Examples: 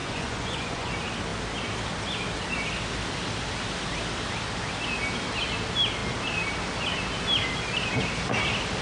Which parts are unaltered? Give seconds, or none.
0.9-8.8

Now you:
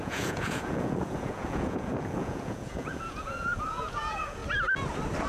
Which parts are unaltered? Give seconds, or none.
4.4-5.3